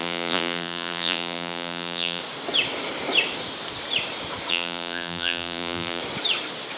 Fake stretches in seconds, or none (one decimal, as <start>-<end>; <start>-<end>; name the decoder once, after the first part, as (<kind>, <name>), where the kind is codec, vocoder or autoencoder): 0.0-2.2 (vocoder, BigVGAN v2); 4.5-6.0